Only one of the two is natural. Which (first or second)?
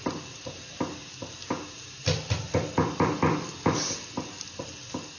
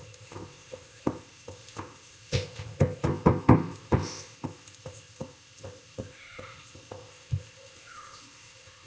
first